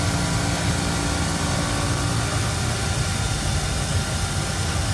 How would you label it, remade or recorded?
recorded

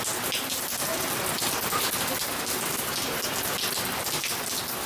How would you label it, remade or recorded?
recorded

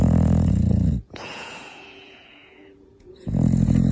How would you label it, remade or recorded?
remade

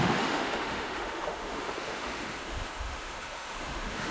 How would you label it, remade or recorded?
remade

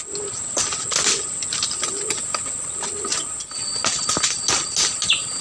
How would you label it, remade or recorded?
recorded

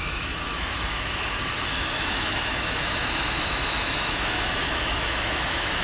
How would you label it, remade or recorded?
remade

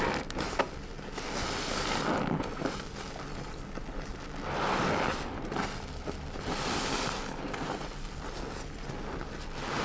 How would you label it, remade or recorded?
recorded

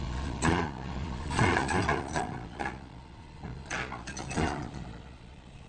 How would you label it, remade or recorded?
remade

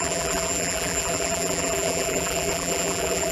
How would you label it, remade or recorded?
remade